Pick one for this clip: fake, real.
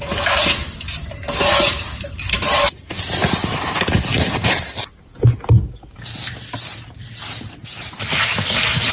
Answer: real